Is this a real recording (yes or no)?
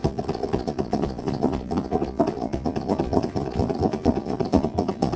no